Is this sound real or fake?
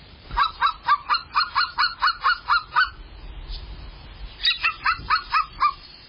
real